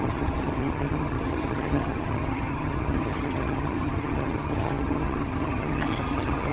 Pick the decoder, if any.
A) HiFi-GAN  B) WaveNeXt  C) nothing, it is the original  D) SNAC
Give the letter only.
A